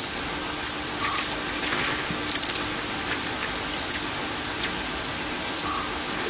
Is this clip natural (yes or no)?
yes